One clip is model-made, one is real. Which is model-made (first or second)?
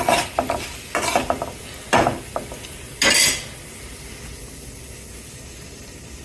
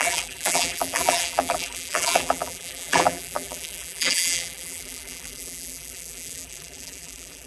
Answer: second